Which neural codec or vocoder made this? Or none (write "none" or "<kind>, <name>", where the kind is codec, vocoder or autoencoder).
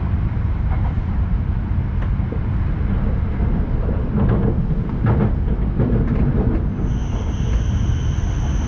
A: none